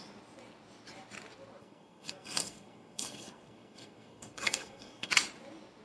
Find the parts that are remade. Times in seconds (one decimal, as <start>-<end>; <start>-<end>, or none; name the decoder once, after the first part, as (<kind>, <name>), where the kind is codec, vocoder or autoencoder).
1.6-5.1 (codec, SNAC)